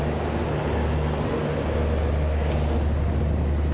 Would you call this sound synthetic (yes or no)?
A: no